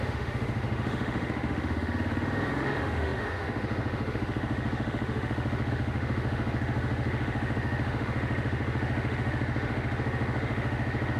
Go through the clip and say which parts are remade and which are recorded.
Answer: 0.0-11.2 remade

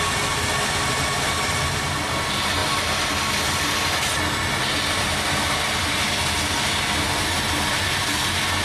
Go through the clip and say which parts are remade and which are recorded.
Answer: 0.0-8.6 recorded

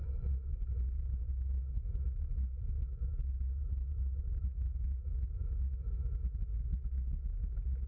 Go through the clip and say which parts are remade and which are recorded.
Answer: 0.0-1.0 recorded; 1.0-7.9 remade